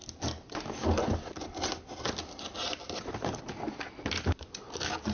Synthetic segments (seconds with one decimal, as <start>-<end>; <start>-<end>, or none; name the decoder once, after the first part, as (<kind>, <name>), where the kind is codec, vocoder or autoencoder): none